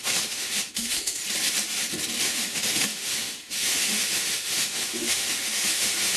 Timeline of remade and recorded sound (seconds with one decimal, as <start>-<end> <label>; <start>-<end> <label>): 0.0-1.2 remade; 1.2-2.2 recorded; 2.2-6.2 remade

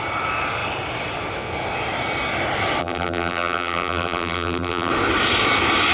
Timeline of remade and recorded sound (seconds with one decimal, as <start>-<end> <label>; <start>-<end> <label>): 0.0-2.8 recorded; 2.8-4.9 remade; 4.9-5.9 recorded

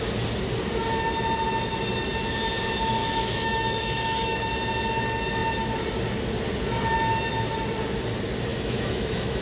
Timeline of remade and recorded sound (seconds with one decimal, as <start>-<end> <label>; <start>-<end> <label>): 0.0-3.0 recorded; 3.0-4.5 remade; 4.5-8.5 recorded; 8.5-9.4 remade

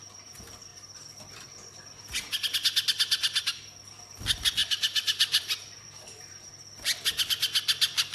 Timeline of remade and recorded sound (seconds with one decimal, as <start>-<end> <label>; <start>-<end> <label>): 0.0-4.6 recorded; 4.6-6.5 remade; 6.5-8.1 recorded